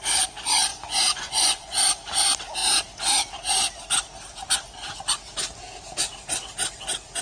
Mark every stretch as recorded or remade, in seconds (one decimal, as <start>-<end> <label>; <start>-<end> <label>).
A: 0.0-0.7 recorded; 0.7-1.8 remade; 1.8-7.2 recorded